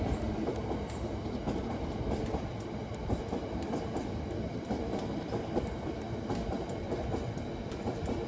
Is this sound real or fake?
fake